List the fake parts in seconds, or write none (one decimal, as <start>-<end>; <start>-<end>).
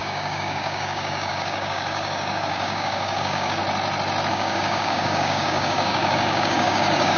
0.0-3.6; 4.3-7.2